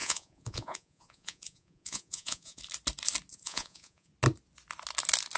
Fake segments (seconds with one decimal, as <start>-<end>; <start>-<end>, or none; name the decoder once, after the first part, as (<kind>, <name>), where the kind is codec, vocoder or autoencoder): 0.0-2.6 (vocoder, Vocos); 3.3-4.1